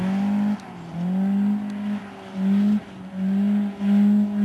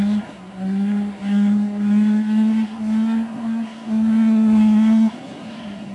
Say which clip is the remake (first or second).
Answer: second